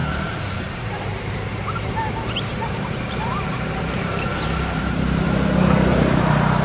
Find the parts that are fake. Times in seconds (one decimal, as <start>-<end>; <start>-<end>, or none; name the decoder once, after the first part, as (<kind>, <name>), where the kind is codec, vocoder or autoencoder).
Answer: 0.0-6.6 (vocoder, BigVGAN v2)